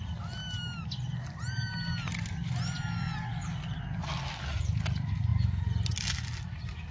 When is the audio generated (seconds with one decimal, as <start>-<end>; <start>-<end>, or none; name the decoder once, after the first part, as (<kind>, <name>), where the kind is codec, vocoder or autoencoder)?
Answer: none